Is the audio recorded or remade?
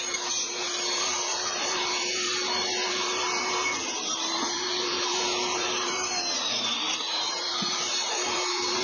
remade